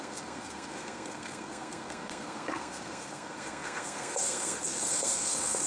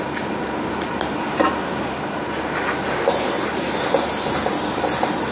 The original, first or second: second